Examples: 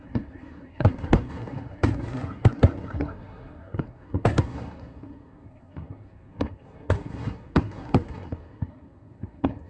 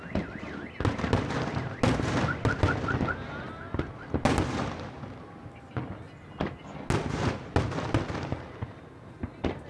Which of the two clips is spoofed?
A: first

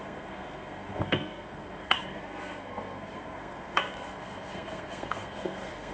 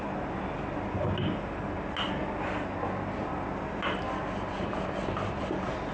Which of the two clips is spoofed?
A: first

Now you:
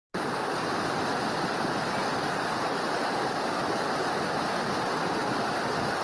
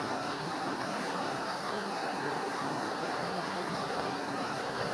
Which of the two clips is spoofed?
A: second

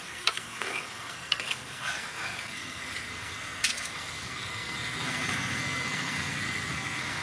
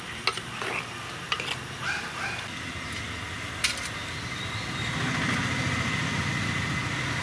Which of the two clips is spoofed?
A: first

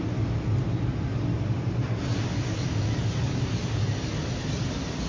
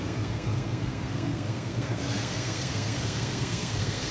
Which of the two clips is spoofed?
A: second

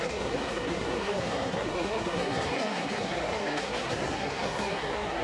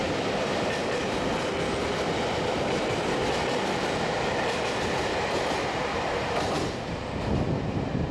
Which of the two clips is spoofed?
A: first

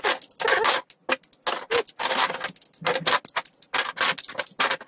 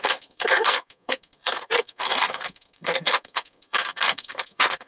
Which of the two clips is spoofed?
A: second